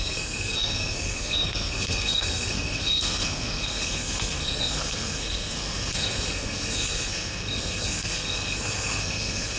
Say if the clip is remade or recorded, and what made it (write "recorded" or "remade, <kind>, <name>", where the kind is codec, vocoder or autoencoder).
remade, codec, SNAC